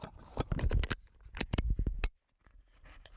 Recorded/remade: recorded